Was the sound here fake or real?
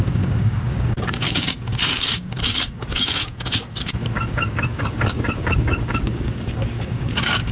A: fake